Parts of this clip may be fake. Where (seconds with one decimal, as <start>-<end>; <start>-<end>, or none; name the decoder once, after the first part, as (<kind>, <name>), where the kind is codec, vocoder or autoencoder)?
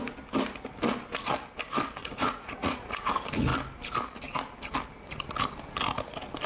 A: 2.0-3.1 (vocoder, Vocos)